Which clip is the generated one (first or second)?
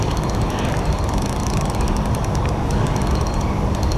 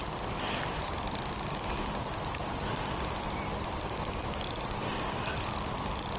first